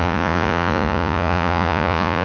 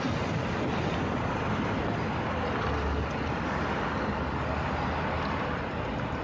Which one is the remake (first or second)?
first